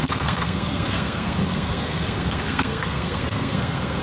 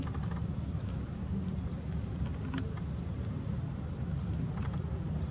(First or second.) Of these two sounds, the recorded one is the second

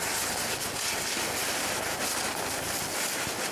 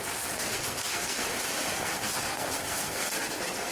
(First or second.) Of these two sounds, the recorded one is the first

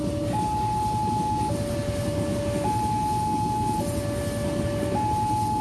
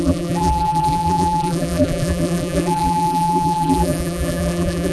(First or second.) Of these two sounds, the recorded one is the first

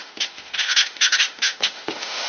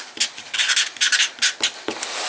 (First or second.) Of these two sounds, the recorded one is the second